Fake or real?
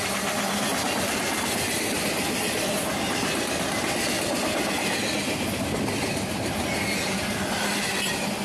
real